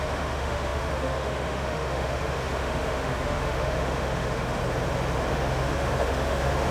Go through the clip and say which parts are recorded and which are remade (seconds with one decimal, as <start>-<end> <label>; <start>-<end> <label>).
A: 0.0-4.6 remade; 4.6-5.3 recorded; 5.3-6.7 remade